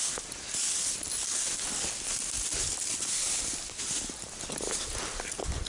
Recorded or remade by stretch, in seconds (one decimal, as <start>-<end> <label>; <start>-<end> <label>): 0.0-5.7 recorded